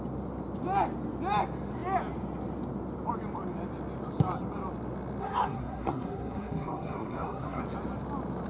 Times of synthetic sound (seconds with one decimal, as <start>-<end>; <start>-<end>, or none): 5.2-7.6